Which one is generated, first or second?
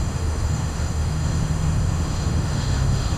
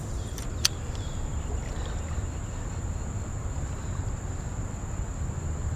first